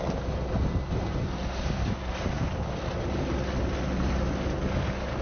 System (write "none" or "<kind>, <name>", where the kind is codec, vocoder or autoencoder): none